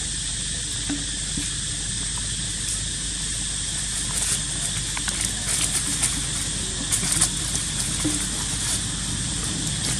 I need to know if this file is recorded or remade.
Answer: recorded